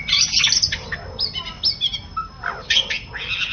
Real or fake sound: real